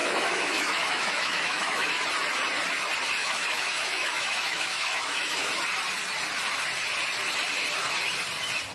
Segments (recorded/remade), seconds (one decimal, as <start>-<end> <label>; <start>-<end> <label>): 0.0-1.9 remade; 1.9-3.2 recorded; 3.2-5.5 remade; 5.5-8.7 recorded